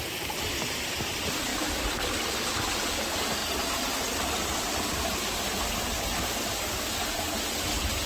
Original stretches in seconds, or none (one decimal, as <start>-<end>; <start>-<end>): 0.0-8.1

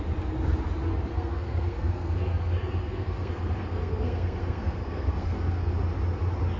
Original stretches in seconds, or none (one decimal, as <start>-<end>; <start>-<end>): 0.0-1.1; 2.4-2.8; 5.7-6.6

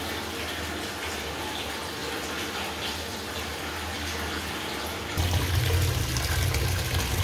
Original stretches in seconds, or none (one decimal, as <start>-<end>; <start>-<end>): 0.0-7.2

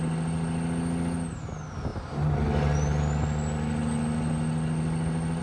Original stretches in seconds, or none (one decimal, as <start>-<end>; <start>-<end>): 0.0-5.4

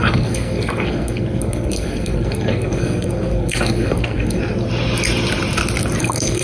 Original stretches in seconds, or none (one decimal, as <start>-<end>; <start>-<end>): 4.4-6.0

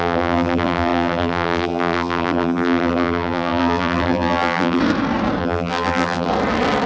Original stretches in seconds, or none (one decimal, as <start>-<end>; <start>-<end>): 4.8-5.4; 6.3-6.9